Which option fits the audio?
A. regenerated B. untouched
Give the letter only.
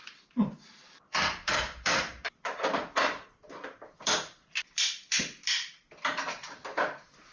A